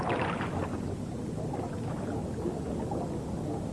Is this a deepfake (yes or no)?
no